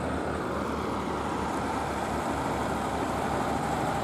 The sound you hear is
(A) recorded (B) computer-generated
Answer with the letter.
A